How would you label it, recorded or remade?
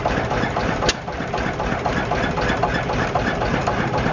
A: recorded